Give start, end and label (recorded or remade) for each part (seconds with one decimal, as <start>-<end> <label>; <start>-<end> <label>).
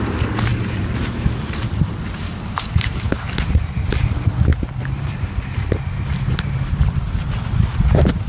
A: 0.0-0.5 recorded; 0.5-3.9 remade; 3.9-4.5 recorded; 4.5-7.3 remade; 7.3-8.3 recorded